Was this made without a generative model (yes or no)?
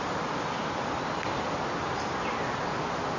yes